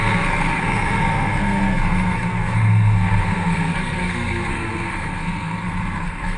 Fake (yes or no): yes